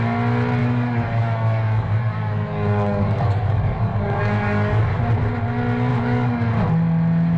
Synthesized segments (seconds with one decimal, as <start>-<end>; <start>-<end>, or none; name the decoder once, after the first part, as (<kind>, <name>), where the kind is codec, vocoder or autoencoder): 0.6-5.0 (codec, DAC); 5.9-6.7